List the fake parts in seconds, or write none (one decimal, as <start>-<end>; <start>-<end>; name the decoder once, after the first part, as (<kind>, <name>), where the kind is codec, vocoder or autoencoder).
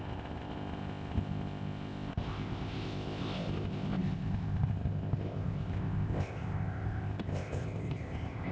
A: 0.0-8.5 (codec, ZipCodec)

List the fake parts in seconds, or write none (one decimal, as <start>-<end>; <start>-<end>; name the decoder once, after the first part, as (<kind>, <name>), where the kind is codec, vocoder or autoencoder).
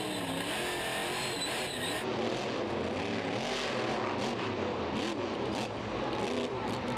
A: none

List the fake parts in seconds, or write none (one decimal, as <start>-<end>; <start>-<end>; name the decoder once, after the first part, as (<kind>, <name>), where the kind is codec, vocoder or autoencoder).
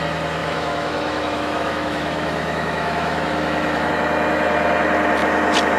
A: 0.4-3.9 (autoencoder, DAC-VAE)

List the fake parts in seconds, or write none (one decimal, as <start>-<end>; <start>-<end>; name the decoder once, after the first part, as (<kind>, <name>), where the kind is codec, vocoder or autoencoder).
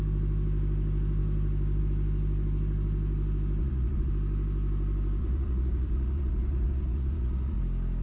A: 3.6-4.1 (vocoder, Vocos); 5.2-7.6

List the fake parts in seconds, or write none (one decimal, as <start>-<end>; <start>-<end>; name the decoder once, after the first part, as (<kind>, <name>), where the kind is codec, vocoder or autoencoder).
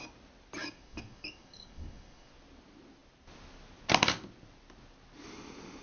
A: 0.6-2.3 (codec, DAC)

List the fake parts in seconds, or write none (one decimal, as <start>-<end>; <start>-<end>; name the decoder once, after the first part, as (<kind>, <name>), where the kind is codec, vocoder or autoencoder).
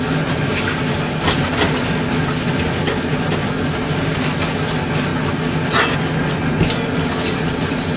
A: none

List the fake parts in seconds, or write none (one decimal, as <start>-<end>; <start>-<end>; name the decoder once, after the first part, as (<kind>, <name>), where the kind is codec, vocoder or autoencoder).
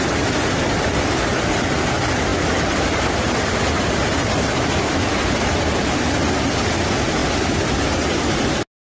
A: 7.2-8.4 (vocoder, BigVGAN v2)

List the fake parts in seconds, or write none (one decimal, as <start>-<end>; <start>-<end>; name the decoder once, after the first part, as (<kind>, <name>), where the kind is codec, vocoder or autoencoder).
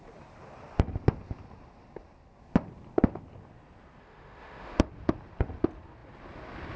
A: 4.0-4.9 (autoencoder, DAC-VAE)